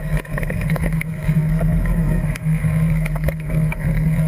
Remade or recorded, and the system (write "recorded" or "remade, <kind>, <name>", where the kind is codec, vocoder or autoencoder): remade, codec, SNAC